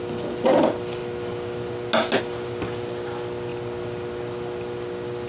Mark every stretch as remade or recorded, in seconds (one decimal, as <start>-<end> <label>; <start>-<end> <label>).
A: 0.0-5.3 recorded